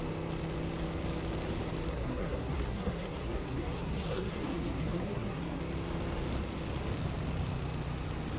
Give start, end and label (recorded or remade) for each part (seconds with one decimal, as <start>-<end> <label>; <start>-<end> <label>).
0.0-1.9 recorded; 1.9-5.6 remade; 5.6-8.4 recorded

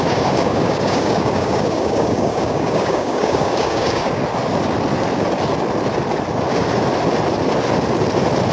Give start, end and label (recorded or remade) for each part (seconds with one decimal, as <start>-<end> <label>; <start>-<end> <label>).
0.0-4.2 remade; 4.2-8.5 recorded

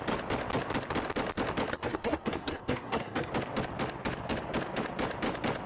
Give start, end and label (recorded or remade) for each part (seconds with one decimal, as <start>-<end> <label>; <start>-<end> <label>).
0.0-1.7 recorded; 1.7-3.3 remade; 3.3-5.7 recorded

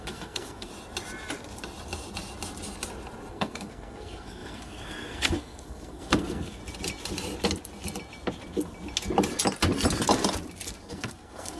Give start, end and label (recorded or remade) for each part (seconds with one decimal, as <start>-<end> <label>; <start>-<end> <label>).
0.0-0.7 remade; 0.7-3.3 recorded; 3.3-6.6 remade; 6.6-10.9 recorded; 10.9-11.6 remade

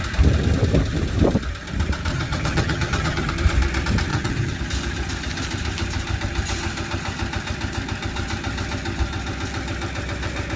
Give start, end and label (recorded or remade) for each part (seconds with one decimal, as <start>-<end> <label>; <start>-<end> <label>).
0.0-2.1 recorded; 2.1-3.3 remade; 3.3-4.1 recorded; 4.1-4.6 remade; 4.6-10.6 recorded

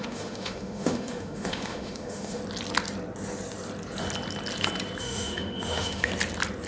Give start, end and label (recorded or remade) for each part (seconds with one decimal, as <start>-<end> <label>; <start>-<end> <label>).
0.0-2.4 remade; 2.4-5.0 recorded; 5.0-6.1 remade; 6.1-6.7 recorded

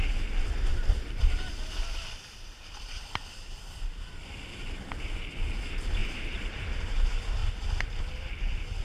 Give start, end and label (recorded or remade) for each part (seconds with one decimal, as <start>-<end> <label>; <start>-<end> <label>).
0.0-6.0 recorded; 6.0-6.5 remade; 6.5-8.8 recorded